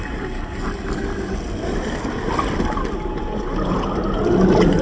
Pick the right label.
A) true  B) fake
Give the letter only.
A